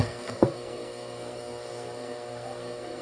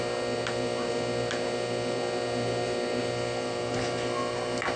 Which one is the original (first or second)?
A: second